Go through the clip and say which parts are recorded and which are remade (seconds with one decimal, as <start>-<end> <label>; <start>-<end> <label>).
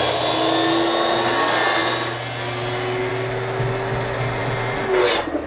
0.0-5.5 recorded